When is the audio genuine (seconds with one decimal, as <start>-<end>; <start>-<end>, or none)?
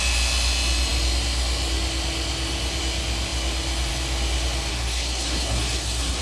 0.0-4.7